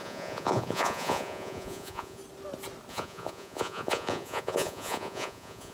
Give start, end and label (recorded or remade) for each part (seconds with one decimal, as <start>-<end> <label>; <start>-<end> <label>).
0.0-2.2 remade; 2.2-2.9 recorded; 2.9-5.7 remade